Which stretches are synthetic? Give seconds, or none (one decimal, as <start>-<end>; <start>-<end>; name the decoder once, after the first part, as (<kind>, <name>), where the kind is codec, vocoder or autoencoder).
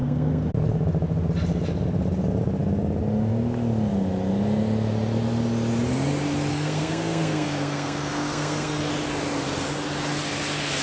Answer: 0.0-0.5 (codec, SNAC); 6.5-8.9